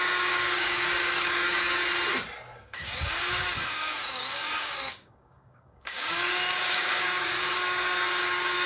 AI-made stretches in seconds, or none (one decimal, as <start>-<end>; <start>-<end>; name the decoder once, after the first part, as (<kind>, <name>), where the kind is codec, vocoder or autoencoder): 0.0-1.8 (codec, DAC); 2.6-8.7